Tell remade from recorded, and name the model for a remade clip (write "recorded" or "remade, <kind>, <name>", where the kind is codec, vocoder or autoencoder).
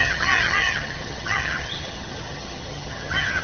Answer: remade, vocoder, HiFi-GAN